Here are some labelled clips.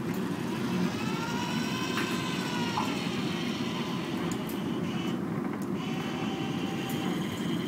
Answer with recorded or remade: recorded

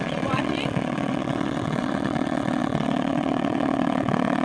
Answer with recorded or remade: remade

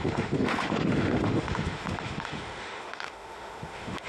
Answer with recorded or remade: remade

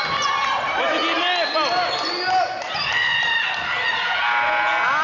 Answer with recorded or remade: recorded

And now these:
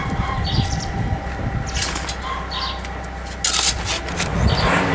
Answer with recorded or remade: recorded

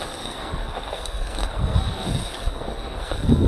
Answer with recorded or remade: remade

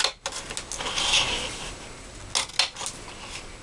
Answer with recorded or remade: recorded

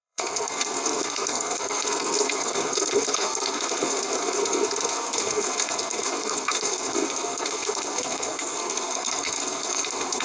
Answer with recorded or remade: remade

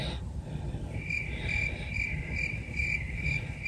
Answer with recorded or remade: remade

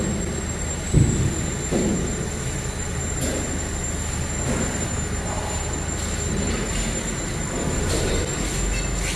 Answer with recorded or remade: recorded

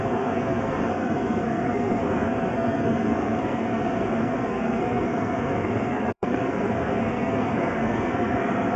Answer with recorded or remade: remade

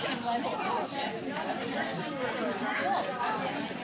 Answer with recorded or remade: recorded